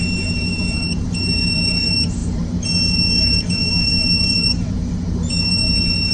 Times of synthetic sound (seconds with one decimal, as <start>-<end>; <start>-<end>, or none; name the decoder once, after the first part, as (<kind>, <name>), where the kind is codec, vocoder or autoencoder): 0.0-6.1 (vocoder, BigVGAN v2)